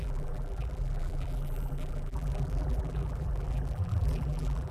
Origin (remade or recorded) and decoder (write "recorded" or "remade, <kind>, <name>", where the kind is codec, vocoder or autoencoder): remade, vocoder, BigVGAN v2